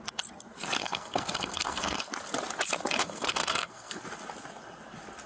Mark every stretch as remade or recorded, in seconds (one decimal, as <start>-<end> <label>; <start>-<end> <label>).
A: 0.0-0.8 recorded; 0.8-2.1 remade; 2.1-3.0 recorded; 3.0-4.0 remade; 4.0-5.3 recorded